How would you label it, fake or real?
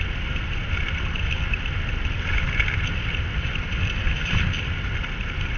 real